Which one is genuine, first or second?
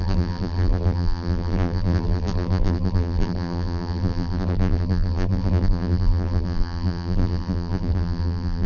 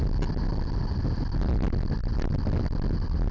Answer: second